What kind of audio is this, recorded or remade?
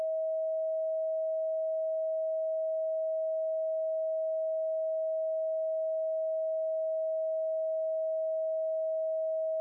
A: recorded